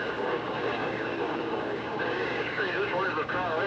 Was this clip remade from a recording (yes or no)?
yes